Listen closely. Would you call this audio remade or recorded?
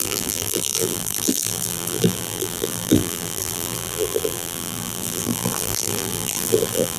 remade